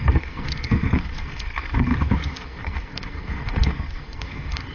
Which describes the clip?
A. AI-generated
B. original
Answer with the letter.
A